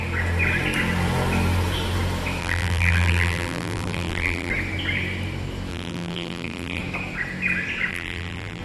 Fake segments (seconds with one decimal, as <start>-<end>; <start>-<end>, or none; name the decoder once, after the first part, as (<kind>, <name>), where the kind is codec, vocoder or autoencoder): 2.4-4.5 (vocoder, BigVGAN v2); 5.7-6.8; 7.9-8.6

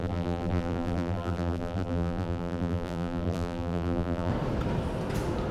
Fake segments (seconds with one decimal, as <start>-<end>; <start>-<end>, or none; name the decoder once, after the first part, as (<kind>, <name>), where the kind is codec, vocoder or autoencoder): 0.0-4.3 (vocoder, BigVGAN v2)

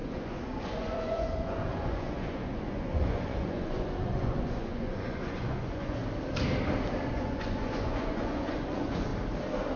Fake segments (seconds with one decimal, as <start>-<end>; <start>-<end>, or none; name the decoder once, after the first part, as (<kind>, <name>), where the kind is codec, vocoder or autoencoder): 0.0-6.0 (vocoder, Vocos); 7.1-9.1